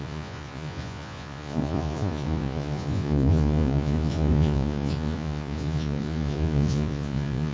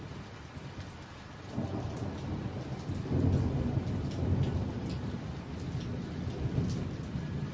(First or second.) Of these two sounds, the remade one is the first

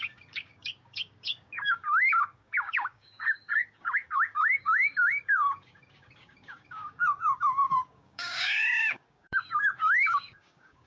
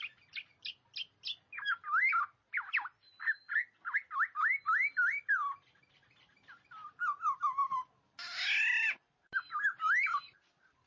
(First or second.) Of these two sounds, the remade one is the first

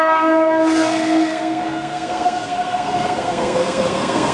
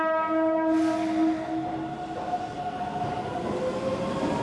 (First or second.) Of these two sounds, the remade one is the first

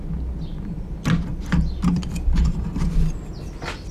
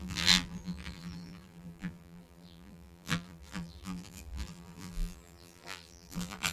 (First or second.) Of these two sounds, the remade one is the second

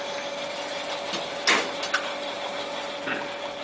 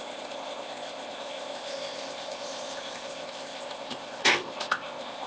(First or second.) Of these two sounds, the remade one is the second